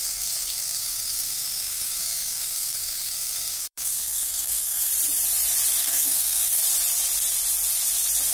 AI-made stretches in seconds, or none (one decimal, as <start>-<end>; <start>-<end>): 0.0-4.9; 5.8-6.6